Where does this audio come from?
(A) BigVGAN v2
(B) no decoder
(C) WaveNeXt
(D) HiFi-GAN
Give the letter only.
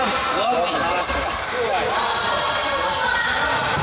A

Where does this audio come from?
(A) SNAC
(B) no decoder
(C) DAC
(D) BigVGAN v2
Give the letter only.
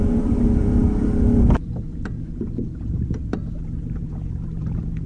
D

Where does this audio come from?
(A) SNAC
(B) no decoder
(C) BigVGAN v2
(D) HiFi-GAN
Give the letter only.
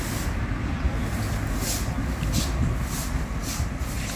B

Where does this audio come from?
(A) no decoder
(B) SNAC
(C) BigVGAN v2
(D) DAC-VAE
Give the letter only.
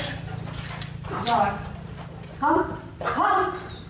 A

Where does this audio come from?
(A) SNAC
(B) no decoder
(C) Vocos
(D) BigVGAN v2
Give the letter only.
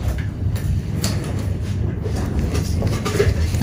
D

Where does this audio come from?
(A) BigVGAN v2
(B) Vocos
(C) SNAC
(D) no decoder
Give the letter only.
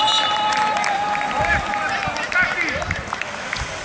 A